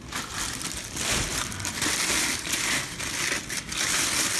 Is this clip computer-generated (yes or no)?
yes